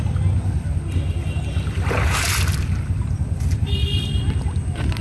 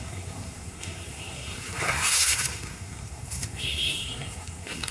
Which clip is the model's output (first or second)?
second